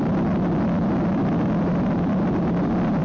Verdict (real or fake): real